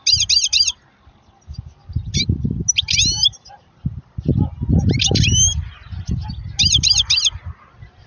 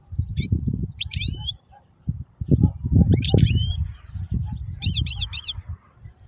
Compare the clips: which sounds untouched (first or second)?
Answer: first